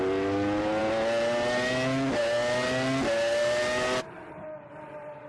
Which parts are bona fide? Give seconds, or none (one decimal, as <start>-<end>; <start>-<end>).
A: 0.0-5.3